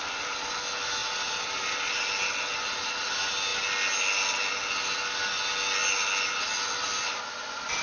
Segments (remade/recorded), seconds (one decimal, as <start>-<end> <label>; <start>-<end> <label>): 0.0-1.0 recorded; 1.0-2.1 remade; 2.1-7.8 recorded